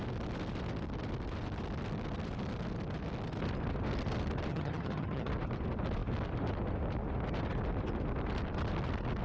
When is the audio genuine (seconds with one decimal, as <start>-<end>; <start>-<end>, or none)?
0.0-4.5; 5.3-9.2